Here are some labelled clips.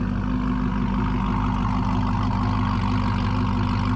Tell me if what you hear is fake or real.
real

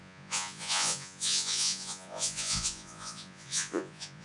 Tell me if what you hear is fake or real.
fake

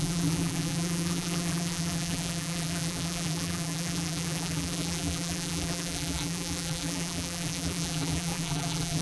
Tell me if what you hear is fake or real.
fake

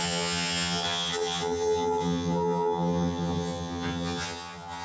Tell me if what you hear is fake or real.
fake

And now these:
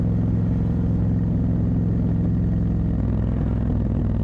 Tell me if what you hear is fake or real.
real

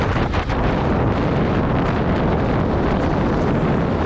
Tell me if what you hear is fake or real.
real